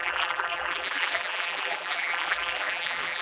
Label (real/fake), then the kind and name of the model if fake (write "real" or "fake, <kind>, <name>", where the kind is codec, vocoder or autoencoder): fake, vocoder, BigVGAN v2